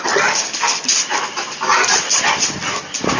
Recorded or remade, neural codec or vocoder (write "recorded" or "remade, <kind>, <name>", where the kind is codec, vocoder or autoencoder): recorded